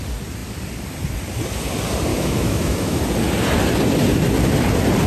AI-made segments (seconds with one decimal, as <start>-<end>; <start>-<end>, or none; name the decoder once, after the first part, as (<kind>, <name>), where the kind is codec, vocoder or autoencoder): 2.1-3.0 (autoencoder, DAC-VAE)